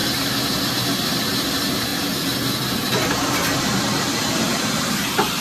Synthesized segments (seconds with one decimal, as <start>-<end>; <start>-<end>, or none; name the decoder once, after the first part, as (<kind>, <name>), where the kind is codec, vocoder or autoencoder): 0.6-1.9 (vocoder, BigVGAN v2); 3.1-5.4